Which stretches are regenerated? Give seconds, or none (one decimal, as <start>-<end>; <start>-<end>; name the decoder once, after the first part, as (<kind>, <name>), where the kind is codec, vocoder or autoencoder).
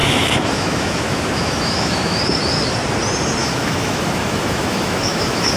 0.0-2.2 (autoencoder, DAC-VAE); 3.4-5.6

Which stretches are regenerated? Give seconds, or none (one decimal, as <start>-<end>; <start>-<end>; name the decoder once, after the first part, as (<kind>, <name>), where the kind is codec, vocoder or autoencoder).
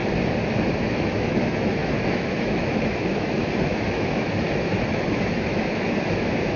0.8-6.6 (autoencoder, DAC-VAE)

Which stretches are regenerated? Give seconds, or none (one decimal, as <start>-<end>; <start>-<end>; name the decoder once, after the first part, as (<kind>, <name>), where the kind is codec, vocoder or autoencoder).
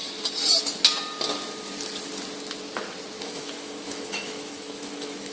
3.2-5.3 (autoencoder, DAC-VAE)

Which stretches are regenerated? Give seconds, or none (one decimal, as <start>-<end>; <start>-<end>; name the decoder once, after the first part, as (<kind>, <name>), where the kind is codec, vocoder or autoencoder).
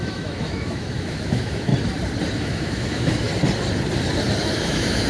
0.0-1.7 (autoencoder, DAC-VAE); 2.4-3.3; 4.4-5.1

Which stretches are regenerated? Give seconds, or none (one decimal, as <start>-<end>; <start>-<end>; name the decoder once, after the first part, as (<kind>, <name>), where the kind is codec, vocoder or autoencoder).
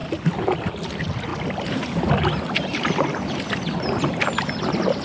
none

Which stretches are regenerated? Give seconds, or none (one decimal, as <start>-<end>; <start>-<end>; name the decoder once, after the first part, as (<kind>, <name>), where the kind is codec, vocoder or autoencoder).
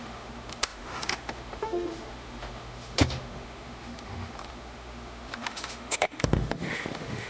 0.0-7.3 (autoencoder, DAC-VAE)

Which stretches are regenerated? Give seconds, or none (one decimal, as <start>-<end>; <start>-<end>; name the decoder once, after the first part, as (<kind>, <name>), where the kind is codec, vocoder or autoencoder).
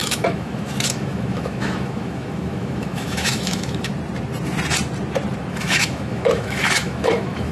0.0-3.9 (autoencoder, DAC-VAE); 5.5-7.5